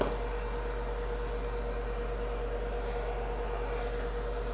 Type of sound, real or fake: real